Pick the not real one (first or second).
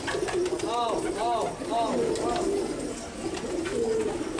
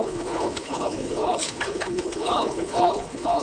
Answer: second